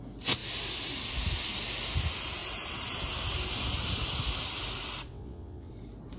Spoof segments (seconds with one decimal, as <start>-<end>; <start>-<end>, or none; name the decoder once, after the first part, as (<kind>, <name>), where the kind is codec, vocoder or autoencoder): 5.1-5.7 (vocoder, WaveNeXt)

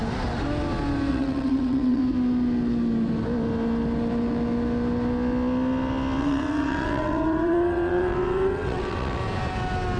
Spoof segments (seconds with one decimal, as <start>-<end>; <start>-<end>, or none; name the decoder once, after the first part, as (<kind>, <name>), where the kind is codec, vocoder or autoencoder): 1.1-2.0 (vocoder, WaveNeXt); 6.2-9.2

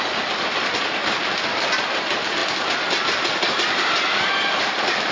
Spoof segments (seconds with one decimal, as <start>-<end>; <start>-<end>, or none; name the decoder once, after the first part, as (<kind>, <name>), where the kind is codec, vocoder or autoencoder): none